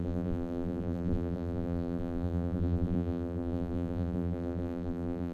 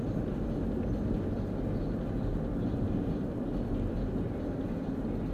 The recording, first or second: second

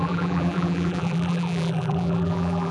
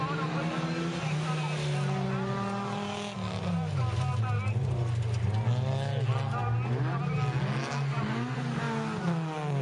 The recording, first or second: second